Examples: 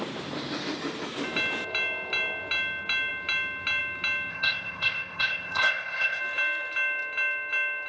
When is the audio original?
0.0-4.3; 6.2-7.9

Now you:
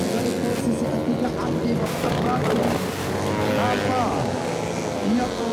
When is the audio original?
0.0-5.5

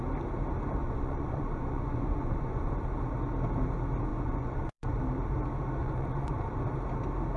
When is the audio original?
0.0-0.8; 2.7-4.1; 5.0-5.8; 6.5-7.4

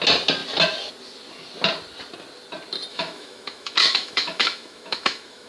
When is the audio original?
0.0-2.9

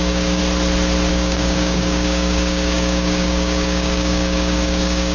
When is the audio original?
0.4-1.1